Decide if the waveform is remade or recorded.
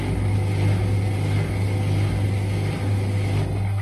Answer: recorded